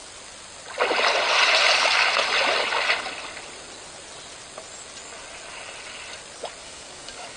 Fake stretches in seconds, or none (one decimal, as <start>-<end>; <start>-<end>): 6.6-7.4